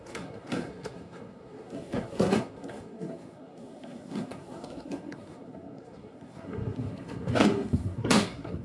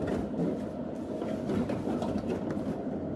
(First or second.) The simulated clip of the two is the first